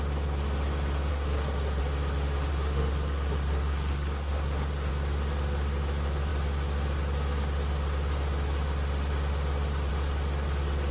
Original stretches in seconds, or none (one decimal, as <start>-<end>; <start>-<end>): 0.0-1.1; 1.8-2.5; 4.9-10.9